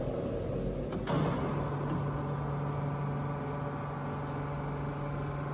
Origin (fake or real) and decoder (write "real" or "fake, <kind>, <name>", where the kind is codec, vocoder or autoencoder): real